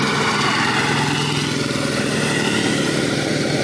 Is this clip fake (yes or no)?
no